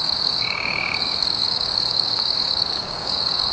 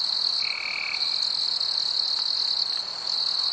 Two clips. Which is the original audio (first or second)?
second